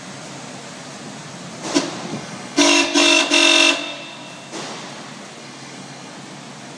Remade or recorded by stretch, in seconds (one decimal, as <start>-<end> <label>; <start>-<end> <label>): 0.0-2.1 recorded; 2.1-3.2 remade; 3.2-5.4 recorded; 5.4-6.1 remade; 6.1-6.8 recorded